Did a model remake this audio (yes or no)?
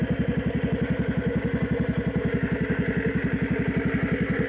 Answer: no